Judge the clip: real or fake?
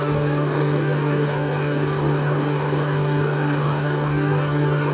fake